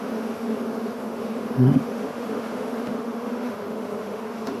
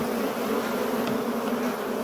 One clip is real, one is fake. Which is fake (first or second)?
first